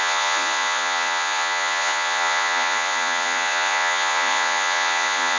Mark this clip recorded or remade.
remade